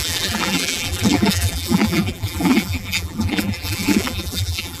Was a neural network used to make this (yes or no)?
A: yes